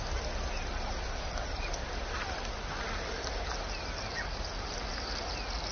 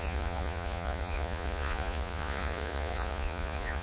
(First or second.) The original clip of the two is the first